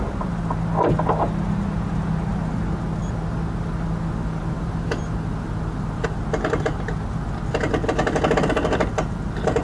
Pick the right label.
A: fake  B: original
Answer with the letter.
B